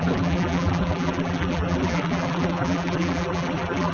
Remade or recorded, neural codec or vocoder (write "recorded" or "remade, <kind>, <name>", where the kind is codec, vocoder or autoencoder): remade, vocoder, BigVGAN v2